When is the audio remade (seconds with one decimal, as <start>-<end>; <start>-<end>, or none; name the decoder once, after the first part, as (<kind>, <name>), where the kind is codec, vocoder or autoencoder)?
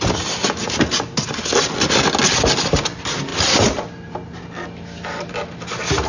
none